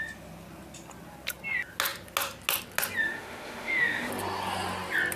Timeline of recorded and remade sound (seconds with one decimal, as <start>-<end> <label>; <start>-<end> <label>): 0.0-3.0 recorded; 3.0-4.1 remade; 4.1-5.2 recorded